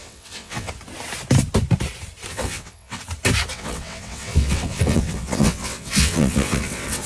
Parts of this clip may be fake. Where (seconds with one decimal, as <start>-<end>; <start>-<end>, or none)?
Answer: 0.0-0.7; 2.3-3.0; 3.5-7.1